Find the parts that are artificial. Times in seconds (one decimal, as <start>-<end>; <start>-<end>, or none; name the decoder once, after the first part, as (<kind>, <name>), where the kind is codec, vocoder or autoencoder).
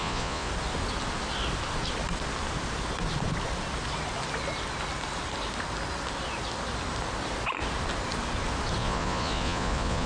0.0-0.5 (vocoder, Vocos); 8.8-10.1